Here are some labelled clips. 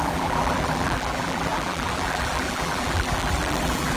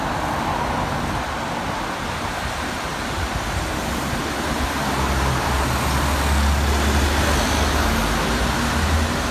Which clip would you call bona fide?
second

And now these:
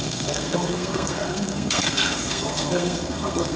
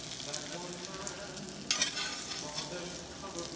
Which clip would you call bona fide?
second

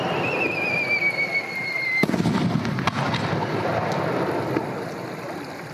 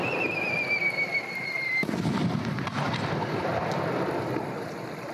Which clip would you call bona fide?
first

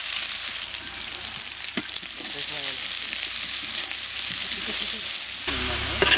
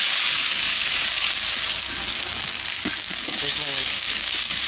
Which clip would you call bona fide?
first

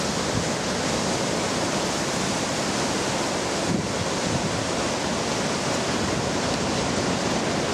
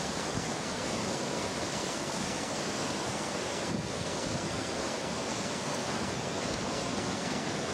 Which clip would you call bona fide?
first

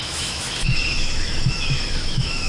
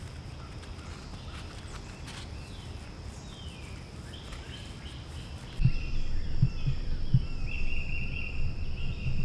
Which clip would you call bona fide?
second